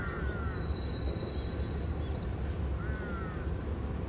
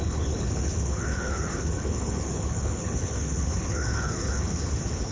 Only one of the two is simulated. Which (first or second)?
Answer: second